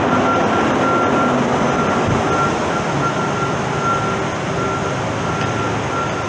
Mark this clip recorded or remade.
recorded